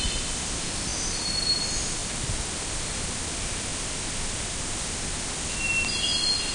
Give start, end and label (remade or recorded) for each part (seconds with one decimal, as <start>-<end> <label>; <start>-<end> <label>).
0.0-2.0 recorded; 2.0-2.7 remade; 2.7-6.5 recorded